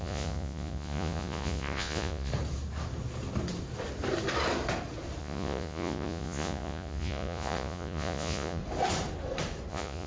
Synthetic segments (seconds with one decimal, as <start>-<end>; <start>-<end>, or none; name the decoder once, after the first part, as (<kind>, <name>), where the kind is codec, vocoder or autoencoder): 0.0-2.3 (vocoder, Vocos); 5.2-8.6; 9.7-10.1